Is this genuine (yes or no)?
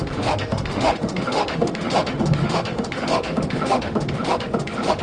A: no